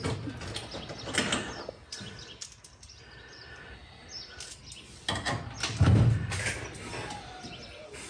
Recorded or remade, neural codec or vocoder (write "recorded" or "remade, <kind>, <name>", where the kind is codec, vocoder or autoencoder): recorded